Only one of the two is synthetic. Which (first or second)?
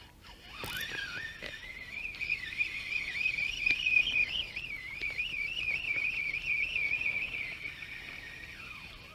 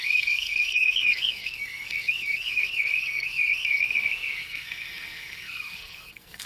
second